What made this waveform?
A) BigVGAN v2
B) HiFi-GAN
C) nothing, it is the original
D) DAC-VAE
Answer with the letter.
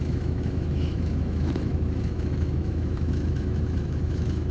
D